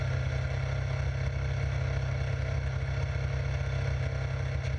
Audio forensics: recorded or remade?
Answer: recorded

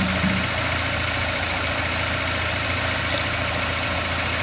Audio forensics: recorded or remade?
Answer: recorded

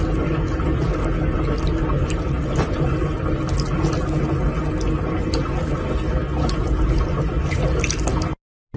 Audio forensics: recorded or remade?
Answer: recorded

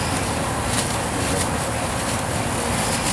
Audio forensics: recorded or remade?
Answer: recorded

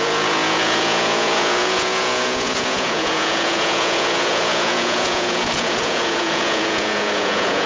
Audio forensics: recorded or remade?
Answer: remade